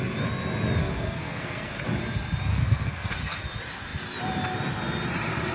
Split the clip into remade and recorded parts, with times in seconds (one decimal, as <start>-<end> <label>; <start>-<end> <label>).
0.0-0.8 recorded; 0.8-1.8 remade; 1.8-2.5 recorded; 2.5-3.4 remade; 3.4-5.5 recorded